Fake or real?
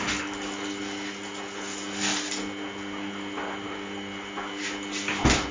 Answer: real